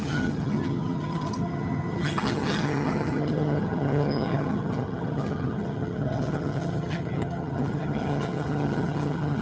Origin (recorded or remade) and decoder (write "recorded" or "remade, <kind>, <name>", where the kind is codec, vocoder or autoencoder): remade, vocoder, HiFi-GAN